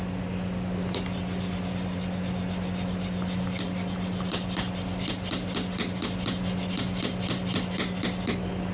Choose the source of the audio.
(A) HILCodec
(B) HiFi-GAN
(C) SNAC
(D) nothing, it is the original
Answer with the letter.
D